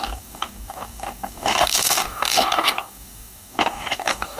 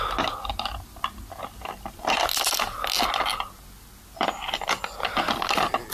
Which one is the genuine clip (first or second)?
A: second